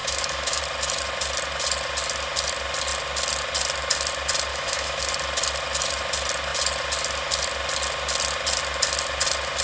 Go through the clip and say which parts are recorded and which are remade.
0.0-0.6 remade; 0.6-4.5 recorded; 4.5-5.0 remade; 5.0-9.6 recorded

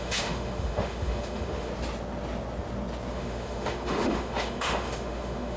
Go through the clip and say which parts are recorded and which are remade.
0.0-1.7 remade; 1.7-3.1 recorded; 3.1-5.6 remade

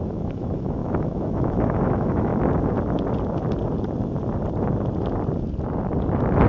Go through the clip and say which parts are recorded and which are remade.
0.0-2.3 remade; 2.3-6.5 recorded

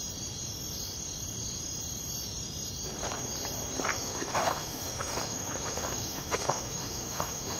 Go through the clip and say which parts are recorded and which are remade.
0.0-3.9 recorded; 3.9-7.6 remade

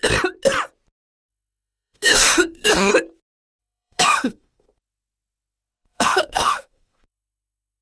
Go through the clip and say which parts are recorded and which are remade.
0.0-1.3 recorded; 1.3-2.9 remade; 2.9-3.6 recorded; 3.6-7.8 remade

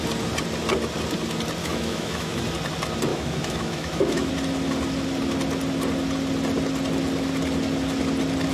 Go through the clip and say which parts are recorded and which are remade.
0.0-1.6 recorded; 1.6-2.4 remade; 2.4-3.1 recorded; 3.1-4.3 remade; 4.3-8.5 recorded